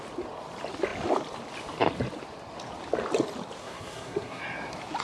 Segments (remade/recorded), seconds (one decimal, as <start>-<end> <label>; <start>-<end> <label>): 0.0-3.6 recorded; 3.6-4.4 remade; 4.4-5.0 recorded